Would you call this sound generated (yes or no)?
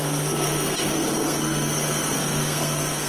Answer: yes